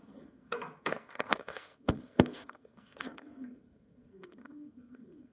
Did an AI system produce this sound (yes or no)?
yes